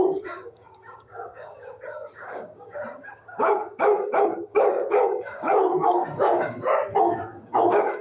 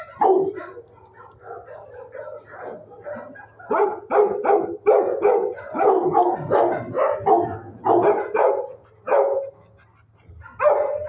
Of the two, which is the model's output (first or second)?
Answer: first